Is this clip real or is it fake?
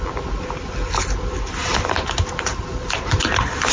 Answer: real